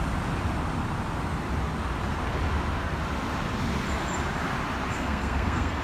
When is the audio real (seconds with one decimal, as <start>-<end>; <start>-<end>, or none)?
0.0-4.9